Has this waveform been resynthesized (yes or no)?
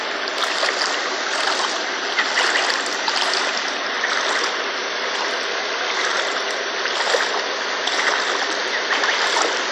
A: no